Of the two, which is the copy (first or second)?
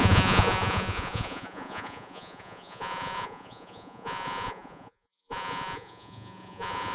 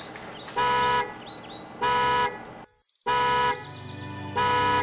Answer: first